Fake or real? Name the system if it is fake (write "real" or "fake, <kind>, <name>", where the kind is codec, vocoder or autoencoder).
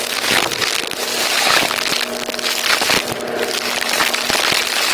real